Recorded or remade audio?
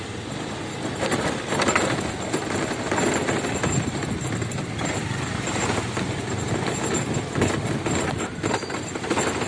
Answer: recorded